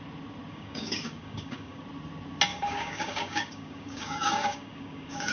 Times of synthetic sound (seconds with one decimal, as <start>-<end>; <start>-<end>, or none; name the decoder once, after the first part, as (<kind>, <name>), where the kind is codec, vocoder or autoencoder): 0.5-1.8 (codec, DAC); 2.5-5.3